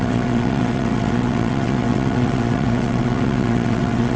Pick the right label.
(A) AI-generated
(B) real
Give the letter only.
A